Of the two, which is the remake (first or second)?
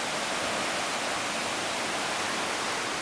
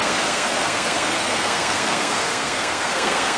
second